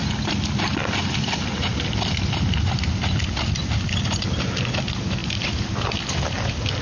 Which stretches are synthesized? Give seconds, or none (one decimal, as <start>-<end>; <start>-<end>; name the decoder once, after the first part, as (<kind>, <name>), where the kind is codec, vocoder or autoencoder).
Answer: none